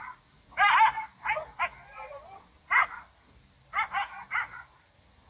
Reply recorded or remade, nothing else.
recorded